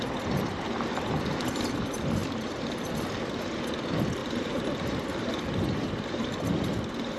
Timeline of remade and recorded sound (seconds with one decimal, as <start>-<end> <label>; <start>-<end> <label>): 0.0-4.2 recorded; 4.2-7.2 remade